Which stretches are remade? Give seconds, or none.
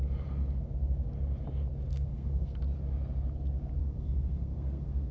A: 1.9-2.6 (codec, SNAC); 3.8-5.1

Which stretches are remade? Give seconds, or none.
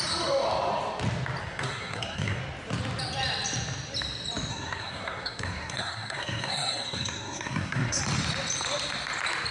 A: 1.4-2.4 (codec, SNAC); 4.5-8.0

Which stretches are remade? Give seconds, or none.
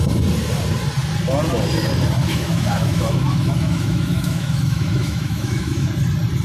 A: 2.2-5.9 (autoencoder, DAC-VAE)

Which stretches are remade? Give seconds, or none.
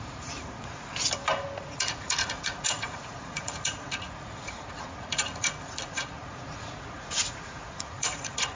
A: 0.0-0.9 (vocoder, Vocos); 1.6-8.6